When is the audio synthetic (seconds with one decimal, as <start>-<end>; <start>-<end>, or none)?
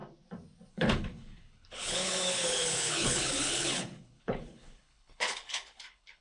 0.7-6.2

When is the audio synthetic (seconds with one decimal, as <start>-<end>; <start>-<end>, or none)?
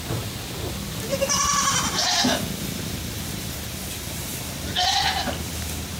1.1-3.5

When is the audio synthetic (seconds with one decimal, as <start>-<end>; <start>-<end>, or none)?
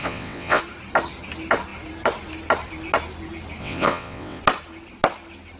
0.0-0.6; 3.6-4.4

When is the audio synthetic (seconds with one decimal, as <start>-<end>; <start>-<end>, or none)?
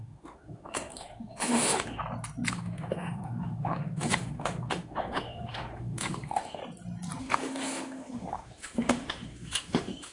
0.0-2.0; 2.5-6.6; 7.2-10.1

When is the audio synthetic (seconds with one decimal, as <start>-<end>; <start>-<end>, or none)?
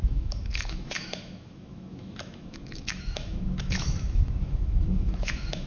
0.0-5.7